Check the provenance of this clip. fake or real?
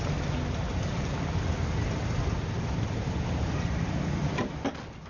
real